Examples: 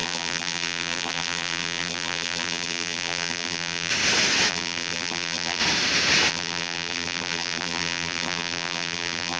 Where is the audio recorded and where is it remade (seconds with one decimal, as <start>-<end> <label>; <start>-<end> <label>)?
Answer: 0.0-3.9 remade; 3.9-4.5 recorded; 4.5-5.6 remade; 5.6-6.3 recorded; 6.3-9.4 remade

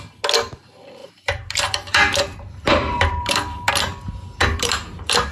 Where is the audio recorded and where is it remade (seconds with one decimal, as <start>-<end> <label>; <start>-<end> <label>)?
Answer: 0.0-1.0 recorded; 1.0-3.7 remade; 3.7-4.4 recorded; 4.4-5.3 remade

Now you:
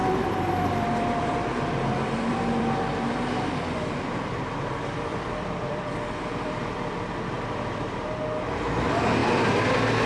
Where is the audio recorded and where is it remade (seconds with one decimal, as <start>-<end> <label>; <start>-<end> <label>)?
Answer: 0.0-2.6 remade; 2.6-5.1 recorded; 5.1-6.7 remade; 6.7-7.3 recorded; 7.3-8.0 remade; 8.0-10.1 recorded

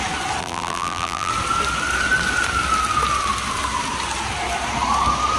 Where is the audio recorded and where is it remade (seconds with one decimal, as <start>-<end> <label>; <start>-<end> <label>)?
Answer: 0.0-0.4 recorded; 0.4-1.3 remade; 1.3-5.4 recorded